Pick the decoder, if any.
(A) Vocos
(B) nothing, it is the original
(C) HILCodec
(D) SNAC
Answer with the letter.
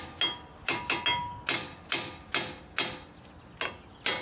B